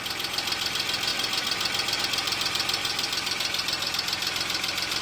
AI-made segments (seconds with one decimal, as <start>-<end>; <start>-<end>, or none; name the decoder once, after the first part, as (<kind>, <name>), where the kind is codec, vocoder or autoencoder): 2.8-3.9 (vocoder, BigVGAN v2)